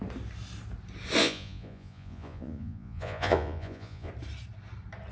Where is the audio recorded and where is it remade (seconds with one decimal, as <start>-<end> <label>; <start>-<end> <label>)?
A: 0.0-1.2 recorded; 1.2-4.1 remade; 4.1-5.1 recorded